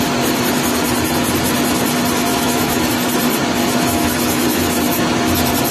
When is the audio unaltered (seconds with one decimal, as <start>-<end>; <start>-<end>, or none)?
0.0-2.3; 2.9-3.6; 5.3-5.7